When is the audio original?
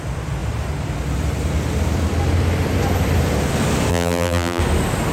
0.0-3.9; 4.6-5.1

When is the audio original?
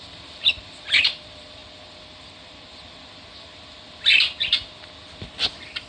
1.6-5.1